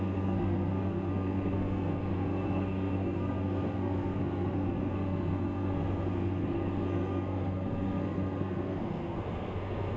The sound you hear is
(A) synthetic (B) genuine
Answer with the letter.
A